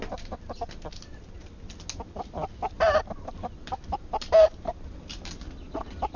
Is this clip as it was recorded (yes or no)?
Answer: yes